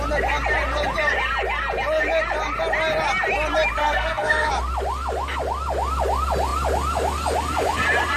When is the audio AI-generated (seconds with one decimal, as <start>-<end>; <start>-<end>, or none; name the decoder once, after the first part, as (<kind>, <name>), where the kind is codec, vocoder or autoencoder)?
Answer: 3.8-4.5 (codec, SNAC)